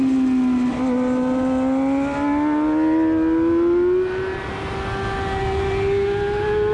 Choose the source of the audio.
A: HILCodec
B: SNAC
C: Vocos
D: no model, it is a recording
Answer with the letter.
D